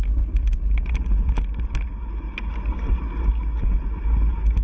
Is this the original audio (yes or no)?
yes